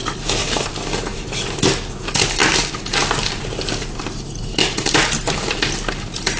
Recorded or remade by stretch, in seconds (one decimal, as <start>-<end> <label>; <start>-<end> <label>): 0.0-0.7 remade; 0.7-1.1 recorded; 1.1-1.7 remade; 1.7-6.4 recorded